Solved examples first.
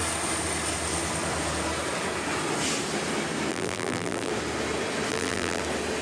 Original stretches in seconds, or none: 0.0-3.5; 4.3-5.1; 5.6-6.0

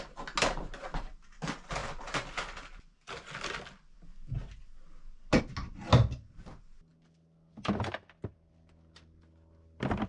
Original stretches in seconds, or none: 0.0-10.1

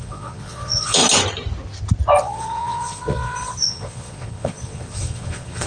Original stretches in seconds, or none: 1.0-2.2

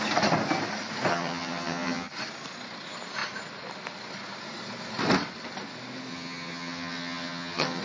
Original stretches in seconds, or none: 0.0-1.1; 2.1-6.1

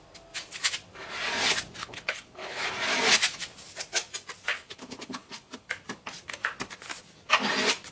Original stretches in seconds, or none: 0.0-1.8; 2.7-4.5; 5.7-7.9

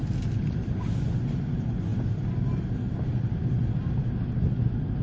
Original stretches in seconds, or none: 0.0-5.0